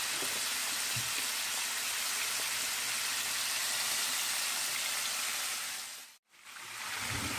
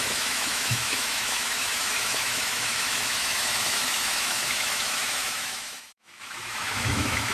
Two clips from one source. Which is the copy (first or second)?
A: second